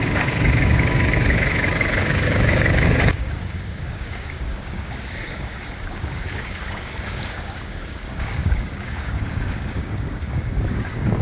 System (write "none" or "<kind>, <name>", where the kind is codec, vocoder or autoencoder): codec, DAC